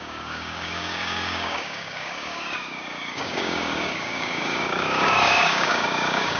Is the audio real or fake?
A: fake